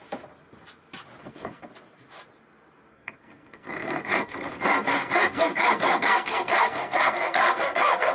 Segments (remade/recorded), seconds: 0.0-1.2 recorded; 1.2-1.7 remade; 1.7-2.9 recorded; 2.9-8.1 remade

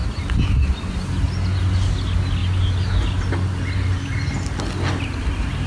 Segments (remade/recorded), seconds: 0.0-5.7 recorded

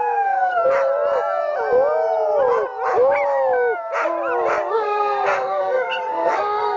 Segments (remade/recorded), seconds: 0.0-0.6 remade; 0.6-4.7 recorded; 4.7-6.8 remade

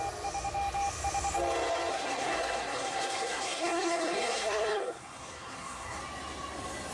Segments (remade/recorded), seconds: 0.0-1.9 recorded; 1.9-6.0 remade; 6.0-6.9 recorded

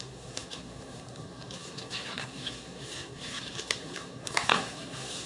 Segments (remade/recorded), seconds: 0.0-5.3 remade

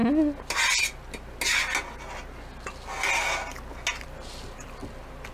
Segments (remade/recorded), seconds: 0.0-5.3 recorded

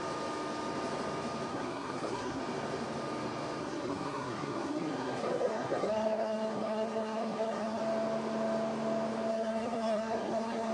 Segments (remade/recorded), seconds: 0.0-1.5 recorded; 1.5-2.4 remade; 2.4-3.6 recorded; 3.6-7.8 remade; 7.8-9.3 recorded; 9.3-10.7 remade